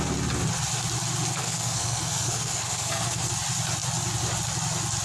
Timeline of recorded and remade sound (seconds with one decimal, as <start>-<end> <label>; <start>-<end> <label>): 0.0-1.4 recorded; 1.4-3.3 remade; 3.3-5.0 recorded